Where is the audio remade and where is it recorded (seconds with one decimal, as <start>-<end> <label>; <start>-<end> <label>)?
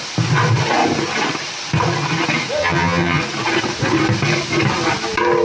0.0-2.6 recorded; 2.6-3.2 remade; 3.2-5.4 recorded